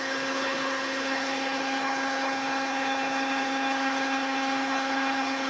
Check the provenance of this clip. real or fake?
fake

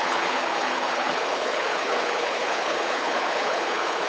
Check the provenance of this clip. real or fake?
fake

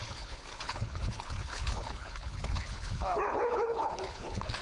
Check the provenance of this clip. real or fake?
fake